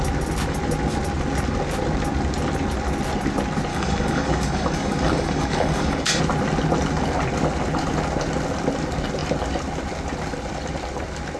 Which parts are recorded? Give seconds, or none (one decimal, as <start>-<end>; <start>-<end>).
0.0-3.7; 6.2-11.4